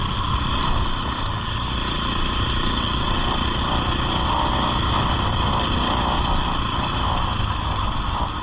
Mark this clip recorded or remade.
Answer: recorded